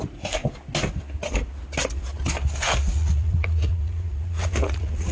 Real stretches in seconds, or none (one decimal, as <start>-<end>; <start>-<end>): 0.4-2.9